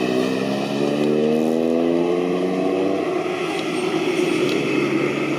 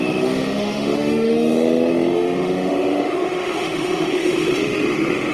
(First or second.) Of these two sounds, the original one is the first